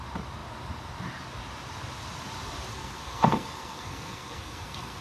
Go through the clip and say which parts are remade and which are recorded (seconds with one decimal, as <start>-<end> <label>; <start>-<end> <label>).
0.0-2.7 recorded; 2.7-5.0 remade